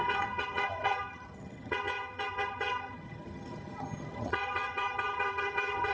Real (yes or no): no